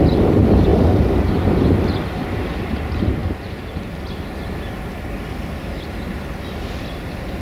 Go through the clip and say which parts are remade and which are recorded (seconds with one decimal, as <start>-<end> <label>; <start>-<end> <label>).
0.0-7.4 recorded